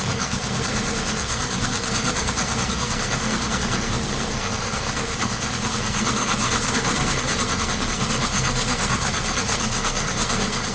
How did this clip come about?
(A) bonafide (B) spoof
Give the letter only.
B